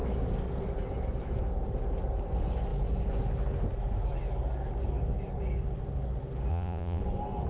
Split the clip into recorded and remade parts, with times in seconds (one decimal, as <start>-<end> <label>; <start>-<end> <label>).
0.0-6.5 recorded; 6.5-7.0 remade; 7.0-7.5 recorded